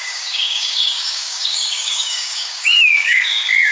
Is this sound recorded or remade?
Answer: remade